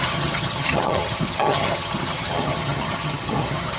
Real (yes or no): no